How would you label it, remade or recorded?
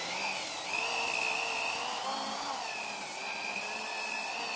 recorded